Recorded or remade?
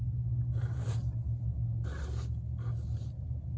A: recorded